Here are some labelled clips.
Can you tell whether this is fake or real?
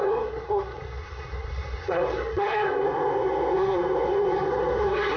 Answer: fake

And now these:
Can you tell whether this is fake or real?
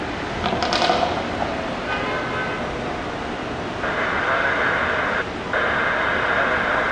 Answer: real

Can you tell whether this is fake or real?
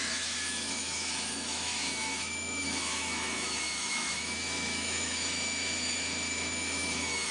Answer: fake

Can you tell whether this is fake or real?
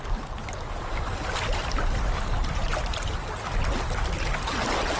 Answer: real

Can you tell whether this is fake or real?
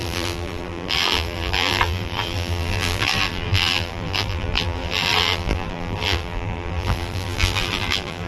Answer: fake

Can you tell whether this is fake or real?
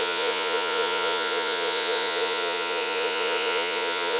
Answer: fake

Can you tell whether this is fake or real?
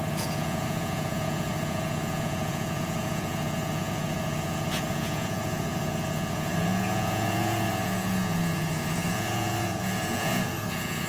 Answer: fake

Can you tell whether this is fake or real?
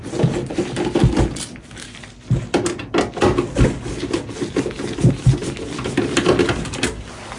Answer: real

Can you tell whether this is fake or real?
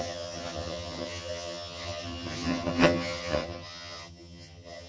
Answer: fake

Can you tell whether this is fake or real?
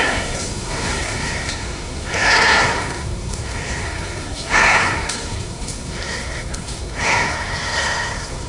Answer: fake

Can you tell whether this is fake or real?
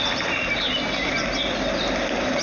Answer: real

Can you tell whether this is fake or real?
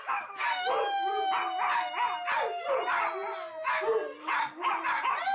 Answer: real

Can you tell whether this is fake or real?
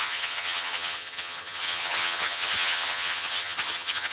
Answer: fake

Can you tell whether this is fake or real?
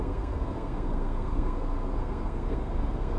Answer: fake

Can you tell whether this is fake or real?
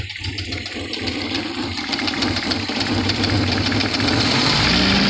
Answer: fake